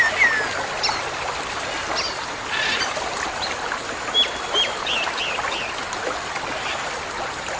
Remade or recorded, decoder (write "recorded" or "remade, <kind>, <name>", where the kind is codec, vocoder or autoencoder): recorded